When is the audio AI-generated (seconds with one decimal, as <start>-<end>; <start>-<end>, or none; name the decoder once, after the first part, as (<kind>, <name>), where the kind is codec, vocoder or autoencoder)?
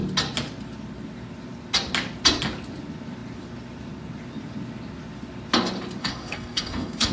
6.0-7.1 (codec, SNAC)